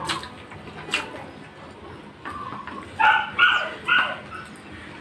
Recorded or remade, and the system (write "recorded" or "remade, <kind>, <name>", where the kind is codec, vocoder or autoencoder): recorded